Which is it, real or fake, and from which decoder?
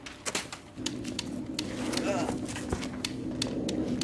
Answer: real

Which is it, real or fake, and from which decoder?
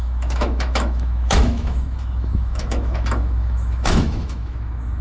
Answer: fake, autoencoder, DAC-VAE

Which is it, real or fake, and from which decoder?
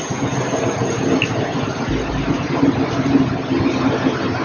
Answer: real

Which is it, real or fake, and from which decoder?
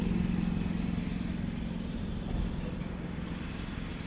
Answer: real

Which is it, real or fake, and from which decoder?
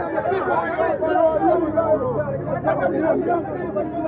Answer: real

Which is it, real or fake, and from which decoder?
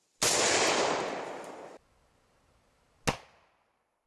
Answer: real